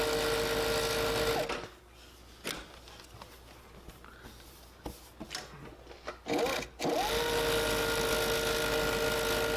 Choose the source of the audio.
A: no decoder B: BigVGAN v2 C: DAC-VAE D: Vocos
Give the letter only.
A